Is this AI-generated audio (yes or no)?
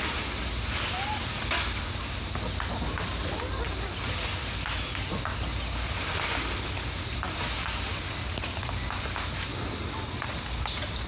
no